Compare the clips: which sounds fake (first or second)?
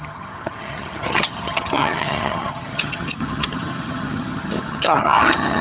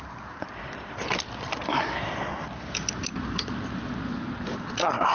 first